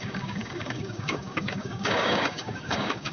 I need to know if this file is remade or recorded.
remade